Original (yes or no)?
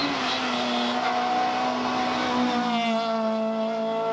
yes